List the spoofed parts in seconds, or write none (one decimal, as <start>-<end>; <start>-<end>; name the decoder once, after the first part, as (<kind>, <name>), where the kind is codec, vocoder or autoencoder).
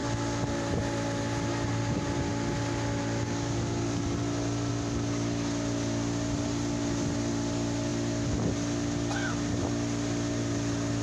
none